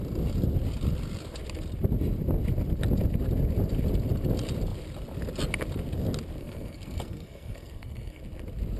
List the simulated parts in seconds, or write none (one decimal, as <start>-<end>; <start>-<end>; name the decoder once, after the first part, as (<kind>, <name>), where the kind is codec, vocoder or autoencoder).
6.4-8.2 (codec, SNAC)